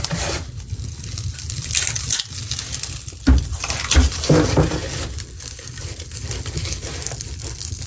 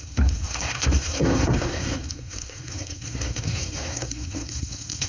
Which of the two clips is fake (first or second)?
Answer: second